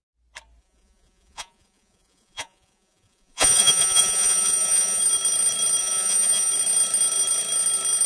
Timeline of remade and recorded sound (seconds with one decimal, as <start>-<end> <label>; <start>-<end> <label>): 0.0-0.6 recorded; 0.6-5.0 remade; 5.0-5.8 recorded; 5.8-6.5 remade; 6.5-8.1 recorded